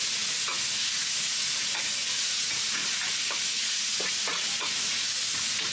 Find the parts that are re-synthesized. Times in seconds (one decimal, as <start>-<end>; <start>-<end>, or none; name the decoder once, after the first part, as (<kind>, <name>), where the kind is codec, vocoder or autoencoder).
0.0-2.8 (vocoder, Vocos); 3.5-5.7